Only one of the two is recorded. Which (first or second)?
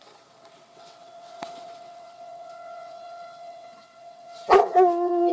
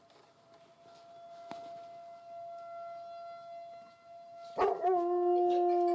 second